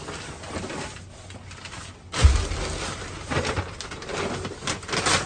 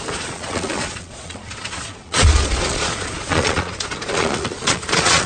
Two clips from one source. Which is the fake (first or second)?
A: second